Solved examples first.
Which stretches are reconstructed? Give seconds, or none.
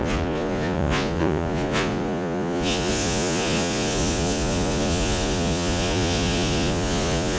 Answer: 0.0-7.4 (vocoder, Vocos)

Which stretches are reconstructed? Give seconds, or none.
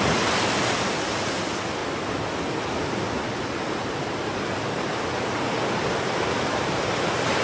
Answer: none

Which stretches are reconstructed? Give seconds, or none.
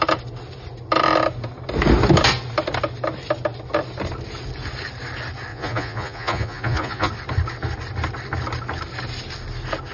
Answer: 5.5-7.1 (vocoder, Vocos)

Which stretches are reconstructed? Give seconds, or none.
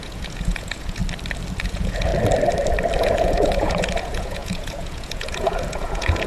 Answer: 0.0-1.0 (vocoder, Vocos); 1.6-2.1; 3.0-6.3